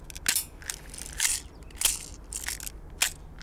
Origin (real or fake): real